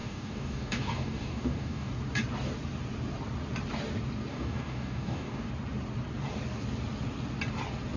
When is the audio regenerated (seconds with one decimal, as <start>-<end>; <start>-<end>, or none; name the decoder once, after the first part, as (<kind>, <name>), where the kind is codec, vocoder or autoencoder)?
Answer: 0.0-1.9 (codec, DAC); 4.3-5.5